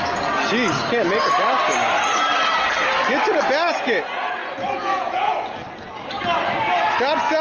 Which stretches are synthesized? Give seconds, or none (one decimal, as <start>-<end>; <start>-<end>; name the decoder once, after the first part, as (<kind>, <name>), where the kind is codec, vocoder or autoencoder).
4.4-5.3 (vocoder, Vocos)